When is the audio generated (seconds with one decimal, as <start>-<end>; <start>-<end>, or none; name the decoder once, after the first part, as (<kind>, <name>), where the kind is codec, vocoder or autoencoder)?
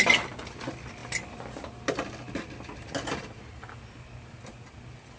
none